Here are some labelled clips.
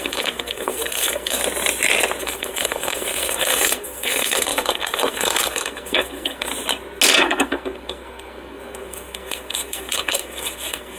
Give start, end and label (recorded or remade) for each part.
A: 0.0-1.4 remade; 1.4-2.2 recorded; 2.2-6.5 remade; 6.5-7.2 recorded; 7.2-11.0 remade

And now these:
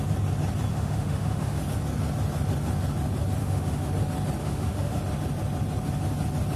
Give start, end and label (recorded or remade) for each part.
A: 0.0-0.7 recorded; 0.7-1.6 remade; 1.6-3.4 recorded; 3.4-3.9 remade; 3.9-4.4 recorded; 4.4-5.0 remade; 5.0-6.6 recorded

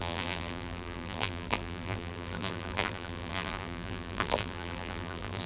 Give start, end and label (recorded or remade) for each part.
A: 0.0-5.5 remade

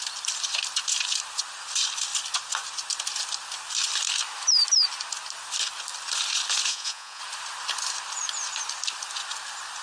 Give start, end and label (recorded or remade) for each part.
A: 0.0-6.7 recorded; 6.7-7.2 remade; 7.2-9.8 recorded

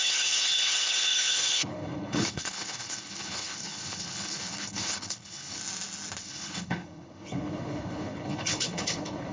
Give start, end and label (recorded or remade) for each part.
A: 0.0-5.6 remade; 5.6-6.2 recorded; 6.2-9.3 remade